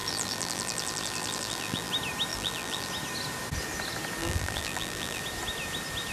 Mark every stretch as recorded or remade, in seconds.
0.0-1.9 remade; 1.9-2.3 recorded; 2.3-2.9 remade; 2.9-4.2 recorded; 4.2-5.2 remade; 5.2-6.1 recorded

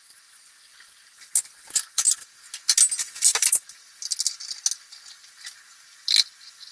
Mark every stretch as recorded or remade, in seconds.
0.0-6.7 recorded

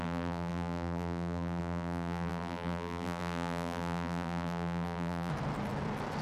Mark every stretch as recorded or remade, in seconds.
0.0-5.3 remade; 5.3-6.2 recorded

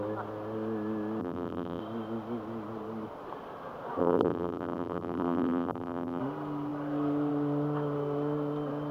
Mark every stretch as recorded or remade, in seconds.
0.0-1.2 recorded; 1.2-1.8 remade; 1.8-4.0 recorded; 4.0-6.2 remade; 6.2-8.9 recorded

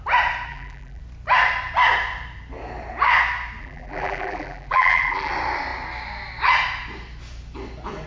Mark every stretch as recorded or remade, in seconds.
0.0-0.5 recorded; 0.5-1.0 remade; 1.0-3.6 recorded; 3.6-5.3 remade; 5.3-8.1 recorded